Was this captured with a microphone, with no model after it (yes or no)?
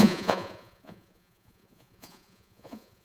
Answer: no